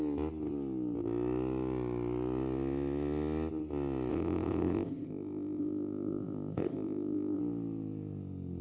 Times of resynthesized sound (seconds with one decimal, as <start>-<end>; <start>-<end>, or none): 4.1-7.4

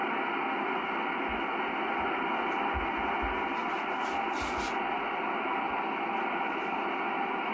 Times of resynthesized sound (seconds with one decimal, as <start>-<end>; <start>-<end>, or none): none

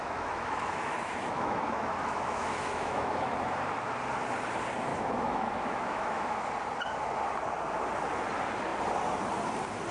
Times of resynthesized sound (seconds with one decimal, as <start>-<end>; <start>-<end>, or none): 0.0-3.3; 4.9-6.5

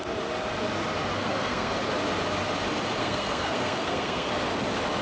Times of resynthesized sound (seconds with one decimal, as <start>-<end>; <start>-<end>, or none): 1.1-1.8; 3.0-4.3

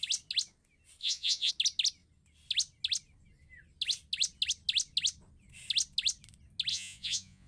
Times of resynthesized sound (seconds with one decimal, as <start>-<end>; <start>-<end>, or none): 1.0-1.5; 6.7-7.5

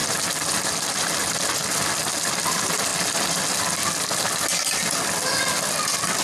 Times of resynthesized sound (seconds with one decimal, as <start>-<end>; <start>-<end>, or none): none